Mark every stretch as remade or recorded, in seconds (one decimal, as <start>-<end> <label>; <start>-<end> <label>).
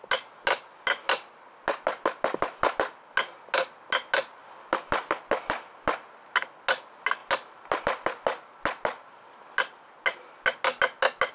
0.0-11.3 recorded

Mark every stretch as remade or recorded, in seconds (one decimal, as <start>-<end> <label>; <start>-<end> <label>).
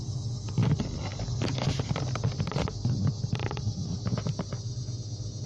0.0-5.5 recorded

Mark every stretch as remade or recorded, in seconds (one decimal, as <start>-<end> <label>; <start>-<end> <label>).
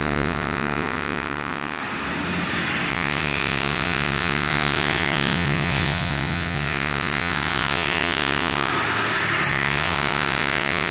0.0-1.8 remade; 1.8-2.9 recorded; 2.9-8.7 remade; 8.7-9.5 recorded; 9.5-10.9 remade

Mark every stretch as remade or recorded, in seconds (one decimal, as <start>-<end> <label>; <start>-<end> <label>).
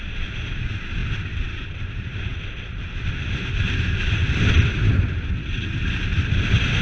0.0-2.3 remade; 2.3-3.1 recorded; 3.1-4.2 remade; 4.2-5.9 recorded; 5.9-6.8 remade